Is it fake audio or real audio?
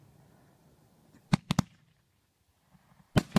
real